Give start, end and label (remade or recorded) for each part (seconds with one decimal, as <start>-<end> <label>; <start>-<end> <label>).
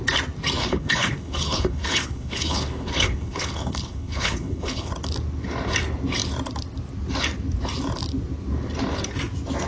0.0-0.6 recorded; 0.6-4.9 remade; 4.9-9.7 recorded